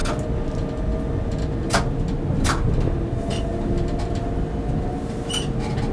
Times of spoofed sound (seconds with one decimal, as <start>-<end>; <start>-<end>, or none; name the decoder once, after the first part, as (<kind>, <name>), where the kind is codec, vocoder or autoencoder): none